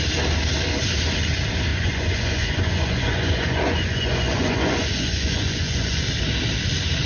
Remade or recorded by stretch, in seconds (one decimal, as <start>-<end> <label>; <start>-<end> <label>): 0.0-1.7 recorded; 1.7-6.0 remade; 6.0-7.1 recorded